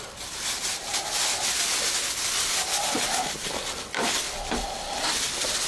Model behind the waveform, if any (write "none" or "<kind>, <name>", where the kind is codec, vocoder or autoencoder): none